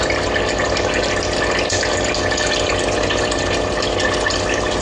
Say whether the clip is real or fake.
real